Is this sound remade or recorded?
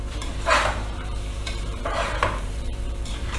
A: remade